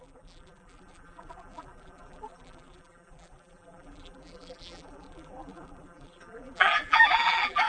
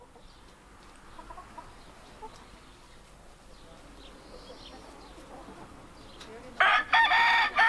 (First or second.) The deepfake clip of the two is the first